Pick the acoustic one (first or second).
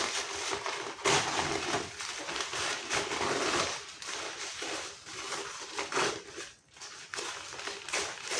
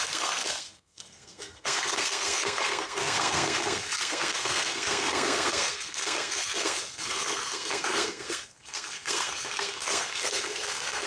first